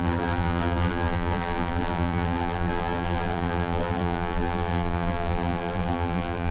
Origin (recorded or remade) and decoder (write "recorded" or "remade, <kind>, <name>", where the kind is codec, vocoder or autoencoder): remade, vocoder, BigVGAN v2